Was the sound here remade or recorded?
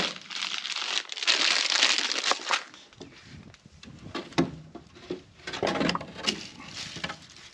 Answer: recorded